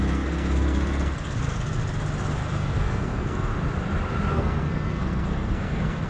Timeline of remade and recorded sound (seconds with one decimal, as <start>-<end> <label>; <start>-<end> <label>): 0.0-1.8 remade; 1.8-2.5 recorded; 2.5-3.5 remade; 3.5-4.3 recorded; 4.3-6.1 remade